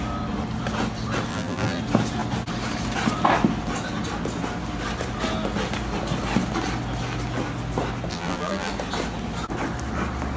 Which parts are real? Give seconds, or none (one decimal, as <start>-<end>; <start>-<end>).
0.0-1.3; 1.8-8.1; 8.7-10.4